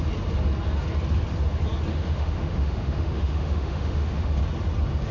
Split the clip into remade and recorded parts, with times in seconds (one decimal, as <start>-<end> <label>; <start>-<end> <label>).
0.0-1.9 recorded; 1.9-4.3 remade; 4.3-5.1 recorded